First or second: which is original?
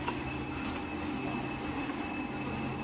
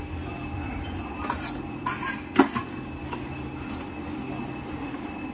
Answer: first